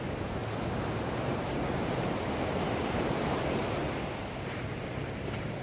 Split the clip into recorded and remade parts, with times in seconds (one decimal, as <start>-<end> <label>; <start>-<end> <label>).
0.0-3.8 remade; 3.8-4.7 recorded; 4.7-5.6 remade